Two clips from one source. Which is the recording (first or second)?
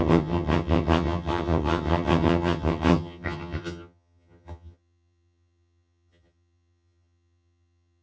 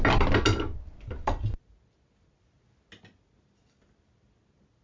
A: second